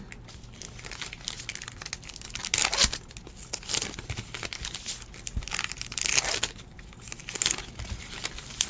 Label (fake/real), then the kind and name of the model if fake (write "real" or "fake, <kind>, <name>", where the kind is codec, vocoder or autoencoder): real